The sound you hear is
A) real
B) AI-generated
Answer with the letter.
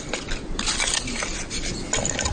A